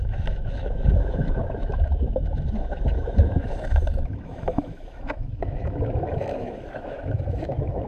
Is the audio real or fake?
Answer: fake